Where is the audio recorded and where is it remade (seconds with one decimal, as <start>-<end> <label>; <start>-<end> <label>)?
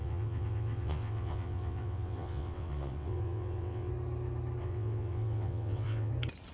0.0-3.9 remade; 3.9-4.6 recorded; 4.6-6.1 remade; 6.1-6.5 recorded